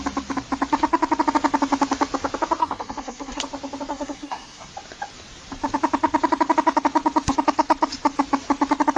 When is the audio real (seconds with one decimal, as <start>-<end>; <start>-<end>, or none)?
0.0-2.6; 3.4-3.9; 4.7-9.0